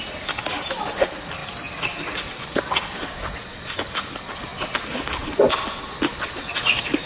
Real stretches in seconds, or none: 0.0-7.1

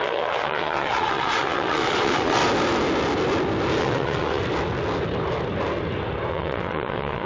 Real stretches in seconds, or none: 2.4-3.8; 4.4-6.3

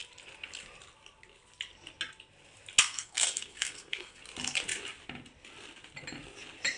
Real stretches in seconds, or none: 0.0-2.8; 4.2-6.8

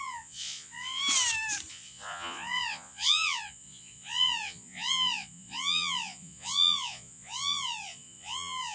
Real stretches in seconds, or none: 1.0-1.7

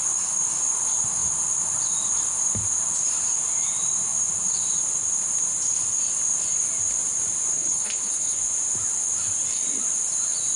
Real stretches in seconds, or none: 0.0-7.5; 8.4-10.6

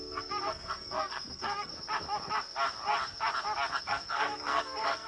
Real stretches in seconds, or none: 1.7-3.8